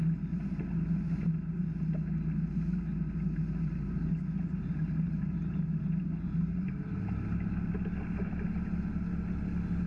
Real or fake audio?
real